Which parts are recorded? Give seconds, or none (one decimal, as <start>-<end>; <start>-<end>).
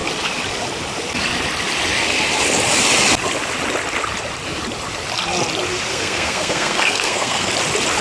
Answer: 0.0-5.9; 7.5-8.0